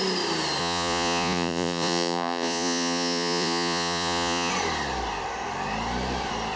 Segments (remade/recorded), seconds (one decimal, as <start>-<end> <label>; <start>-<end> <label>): 0.0-0.6 recorded; 0.6-4.5 remade; 4.5-6.6 recorded